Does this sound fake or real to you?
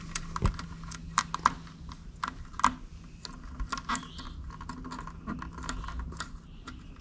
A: real